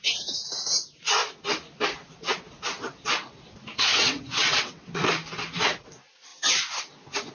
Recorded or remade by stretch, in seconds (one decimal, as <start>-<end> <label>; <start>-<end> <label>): 0.0-3.9 recorded; 3.9-5.0 remade; 5.0-7.3 recorded